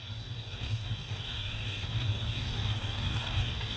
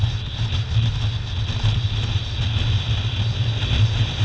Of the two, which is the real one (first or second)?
second